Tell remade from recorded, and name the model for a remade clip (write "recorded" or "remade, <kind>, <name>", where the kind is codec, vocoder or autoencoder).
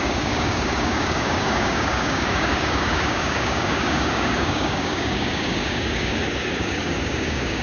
remade, codec, DAC